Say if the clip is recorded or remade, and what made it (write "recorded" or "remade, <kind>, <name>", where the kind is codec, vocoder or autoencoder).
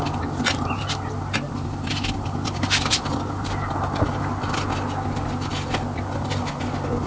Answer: recorded